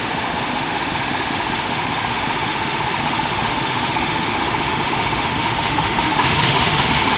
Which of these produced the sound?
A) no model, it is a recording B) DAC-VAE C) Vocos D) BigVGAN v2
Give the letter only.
B